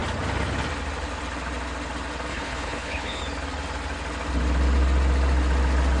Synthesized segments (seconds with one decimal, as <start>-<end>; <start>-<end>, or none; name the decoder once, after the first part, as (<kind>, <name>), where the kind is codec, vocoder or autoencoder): 2.3-3.2 (codec, HILCodec)